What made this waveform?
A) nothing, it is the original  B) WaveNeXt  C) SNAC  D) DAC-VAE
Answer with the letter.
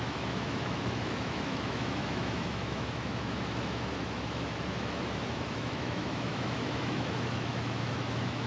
D